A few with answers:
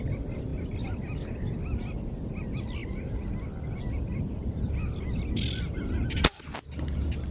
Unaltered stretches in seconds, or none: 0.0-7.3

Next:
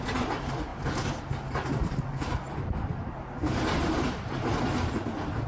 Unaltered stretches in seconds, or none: 0.0-5.5

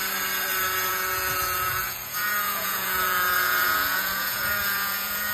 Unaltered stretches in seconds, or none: 0.0-0.9

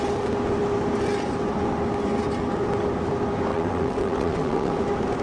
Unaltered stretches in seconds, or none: 0.0-3.5; 4.7-5.2

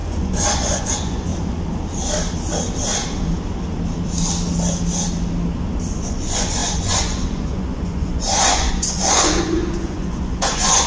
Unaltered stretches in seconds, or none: 1.3-6.0

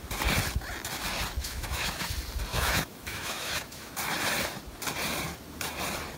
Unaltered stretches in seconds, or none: 0.0-1.4; 2.1-2.5; 3.9-6.2